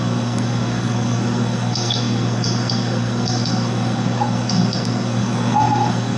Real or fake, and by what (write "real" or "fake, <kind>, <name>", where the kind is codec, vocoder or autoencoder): fake, codec, SNAC